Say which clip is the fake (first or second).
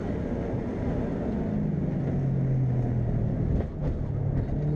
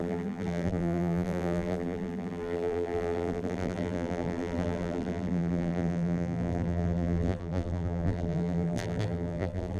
second